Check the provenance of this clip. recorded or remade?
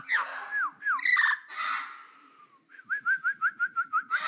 recorded